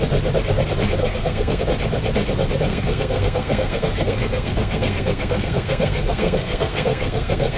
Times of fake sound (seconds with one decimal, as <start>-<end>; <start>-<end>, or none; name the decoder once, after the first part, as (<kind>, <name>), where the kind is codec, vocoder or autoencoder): 1.0-1.6 (codec, SNAC); 2.7-7.6